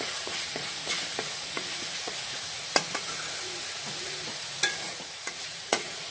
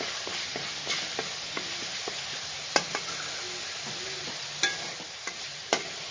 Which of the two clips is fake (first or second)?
first